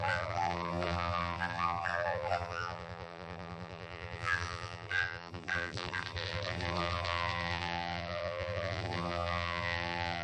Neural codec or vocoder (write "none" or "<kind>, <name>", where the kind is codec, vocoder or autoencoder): vocoder, BigVGAN v2